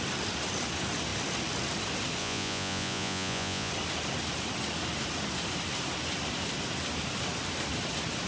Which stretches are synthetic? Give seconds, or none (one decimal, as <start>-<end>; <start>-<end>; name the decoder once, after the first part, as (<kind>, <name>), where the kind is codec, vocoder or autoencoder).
2.2-3.7 (vocoder, Vocos)